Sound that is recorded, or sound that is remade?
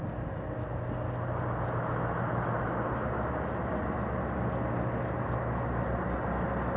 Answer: recorded